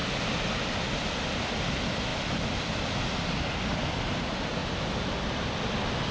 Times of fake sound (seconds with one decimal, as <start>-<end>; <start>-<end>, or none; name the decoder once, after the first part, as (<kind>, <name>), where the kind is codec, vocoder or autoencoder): none